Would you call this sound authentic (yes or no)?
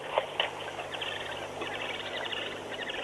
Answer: no